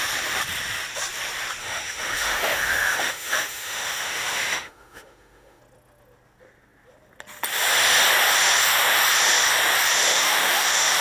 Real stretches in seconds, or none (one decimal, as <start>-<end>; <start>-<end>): 0.0-1.6; 5.6-10.1